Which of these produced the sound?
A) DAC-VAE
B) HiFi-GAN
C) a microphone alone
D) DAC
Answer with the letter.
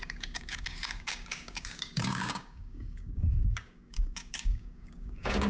D